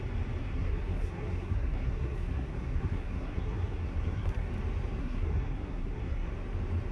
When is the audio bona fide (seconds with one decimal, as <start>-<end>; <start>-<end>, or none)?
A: 0.0-0.4; 4.5-5.0; 6.3-6.9